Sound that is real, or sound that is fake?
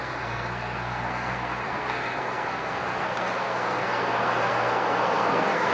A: fake